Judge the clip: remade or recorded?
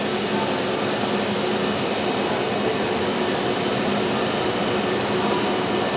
recorded